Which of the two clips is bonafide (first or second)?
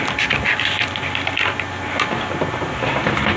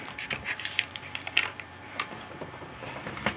first